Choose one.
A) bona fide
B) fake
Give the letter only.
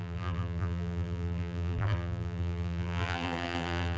B